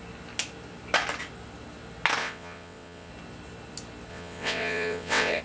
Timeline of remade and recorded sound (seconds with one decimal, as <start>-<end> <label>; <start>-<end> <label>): 0.0-2.2 recorded; 2.2-3.1 remade; 3.1-4.1 recorded; 4.1-5.4 remade